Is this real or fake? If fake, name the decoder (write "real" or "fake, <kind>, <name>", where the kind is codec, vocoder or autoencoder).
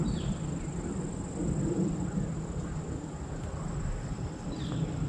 real